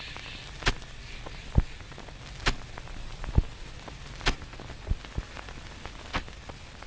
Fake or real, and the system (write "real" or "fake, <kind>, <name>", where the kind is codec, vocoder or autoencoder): real